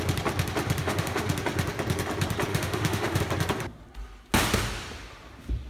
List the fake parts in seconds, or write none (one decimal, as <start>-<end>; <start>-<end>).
0.8-1.3; 2.5-3.2